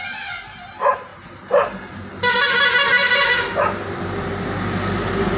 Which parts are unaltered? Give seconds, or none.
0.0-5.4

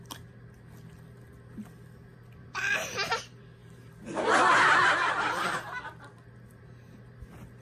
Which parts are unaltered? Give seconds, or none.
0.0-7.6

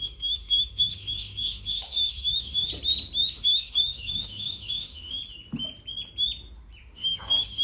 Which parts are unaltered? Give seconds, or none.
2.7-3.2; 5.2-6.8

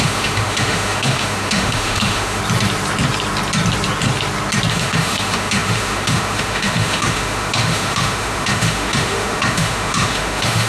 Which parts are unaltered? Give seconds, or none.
2.4-4.7

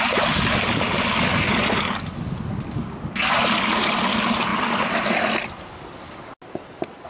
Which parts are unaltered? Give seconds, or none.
0.0-7.1

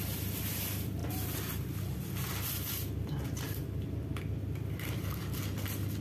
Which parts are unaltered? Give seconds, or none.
0.0-6.0

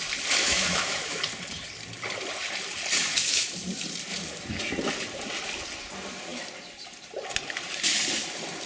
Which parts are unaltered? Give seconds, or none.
0.0-0.4; 1.2-3.0; 3.5-8.7

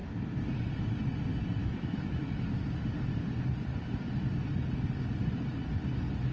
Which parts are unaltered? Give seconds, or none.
0.0-1.6; 2.2-6.3